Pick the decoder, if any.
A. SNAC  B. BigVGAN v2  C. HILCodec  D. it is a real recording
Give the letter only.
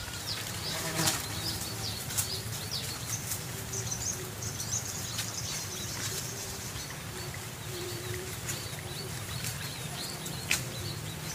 B